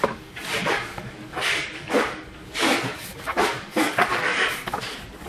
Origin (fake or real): fake